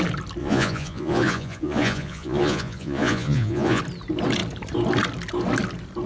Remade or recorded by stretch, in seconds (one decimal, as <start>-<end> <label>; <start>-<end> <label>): 0.0-0.4 recorded; 0.4-3.8 remade; 3.8-6.1 recorded